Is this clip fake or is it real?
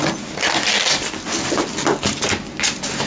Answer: real